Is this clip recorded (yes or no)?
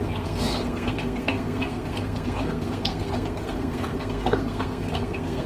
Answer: no